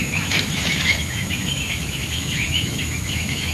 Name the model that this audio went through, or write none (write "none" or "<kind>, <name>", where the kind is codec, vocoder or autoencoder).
autoencoder, DAC-VAE